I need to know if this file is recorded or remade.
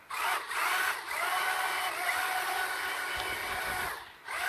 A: recorded